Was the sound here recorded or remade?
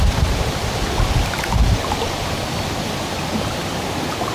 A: recorded